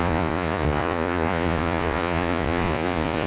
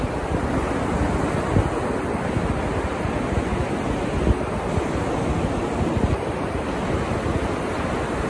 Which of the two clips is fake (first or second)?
first